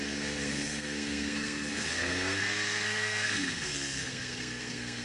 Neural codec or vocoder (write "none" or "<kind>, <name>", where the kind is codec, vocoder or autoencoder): codec, SNAC